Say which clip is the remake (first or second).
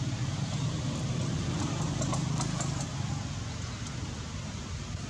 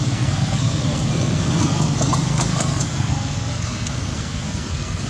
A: second